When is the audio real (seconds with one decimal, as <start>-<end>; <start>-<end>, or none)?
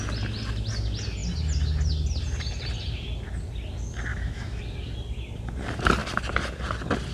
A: 0.0-4.1; 4.6-7.1